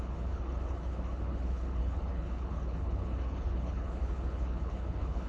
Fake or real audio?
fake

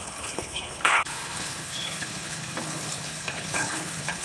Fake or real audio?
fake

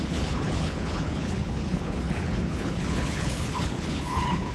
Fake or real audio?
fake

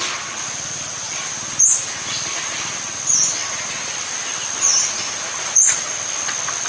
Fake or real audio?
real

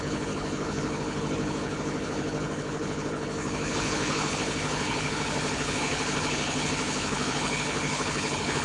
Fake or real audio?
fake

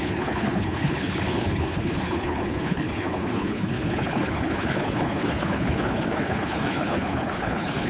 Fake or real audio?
fake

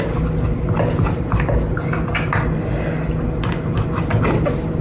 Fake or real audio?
real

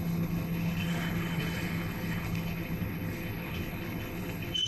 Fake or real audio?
fake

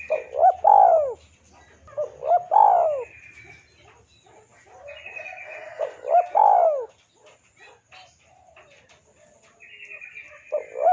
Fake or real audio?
real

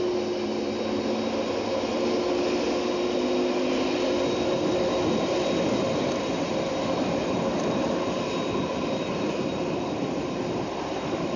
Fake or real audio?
real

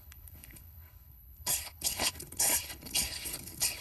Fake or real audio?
fake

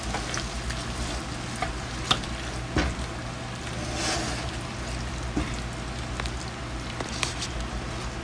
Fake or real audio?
real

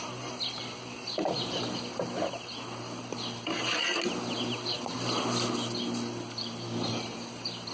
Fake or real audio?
real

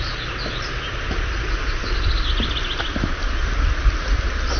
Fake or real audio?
real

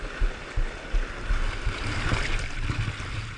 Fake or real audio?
real